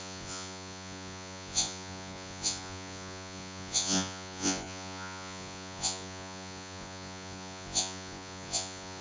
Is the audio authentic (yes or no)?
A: no